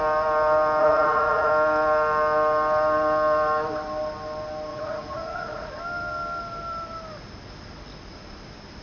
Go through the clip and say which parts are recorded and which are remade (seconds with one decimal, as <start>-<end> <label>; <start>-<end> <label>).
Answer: 0.0-0.8 recorded; 0.8-1.5 remade; 1.5-4.7 recorded; 4.7-5.7 remade; 5.7-8.8 recorded